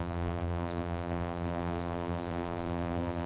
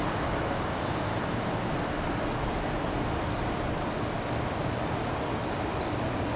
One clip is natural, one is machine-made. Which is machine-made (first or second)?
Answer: first